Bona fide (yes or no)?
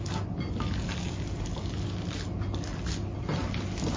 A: yes